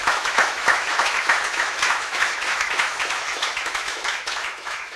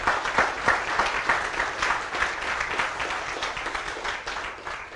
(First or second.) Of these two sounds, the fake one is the first